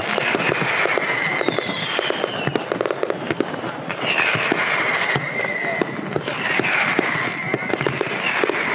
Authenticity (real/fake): real